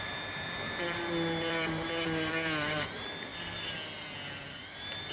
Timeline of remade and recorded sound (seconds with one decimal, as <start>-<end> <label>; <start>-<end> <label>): 0.0-5.1 recorded